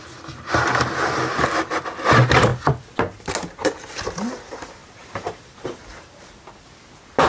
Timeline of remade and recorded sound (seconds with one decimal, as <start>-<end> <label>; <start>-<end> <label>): 0.0-4.8 recorded; 4.8-6.5 remade; 6.5-7.3 recorded